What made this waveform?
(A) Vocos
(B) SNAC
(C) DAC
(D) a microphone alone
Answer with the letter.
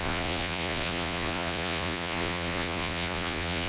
A